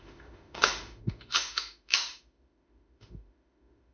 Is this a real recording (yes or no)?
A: no